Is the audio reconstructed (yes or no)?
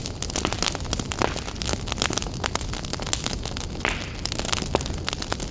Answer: no